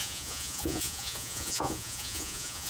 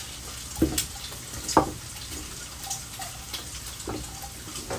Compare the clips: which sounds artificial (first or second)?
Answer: first